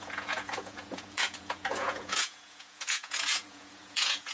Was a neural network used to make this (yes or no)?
yes